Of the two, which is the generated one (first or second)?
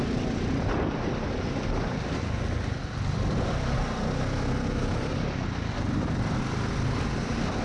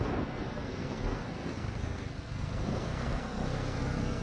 second